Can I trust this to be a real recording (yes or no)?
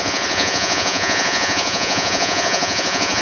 no